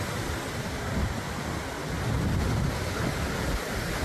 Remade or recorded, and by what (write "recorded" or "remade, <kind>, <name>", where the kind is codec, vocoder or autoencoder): recorded